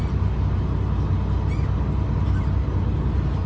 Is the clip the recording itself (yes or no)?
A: yes